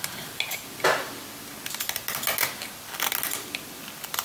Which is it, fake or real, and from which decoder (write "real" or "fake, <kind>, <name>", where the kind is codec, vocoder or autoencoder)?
real